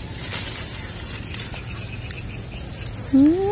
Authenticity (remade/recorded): recorded